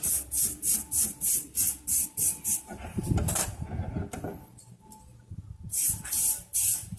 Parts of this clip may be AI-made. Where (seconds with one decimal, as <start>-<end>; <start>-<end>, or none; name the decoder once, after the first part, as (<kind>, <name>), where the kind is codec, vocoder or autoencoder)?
2.7-3.9 (vocoder, BigVGAN v2)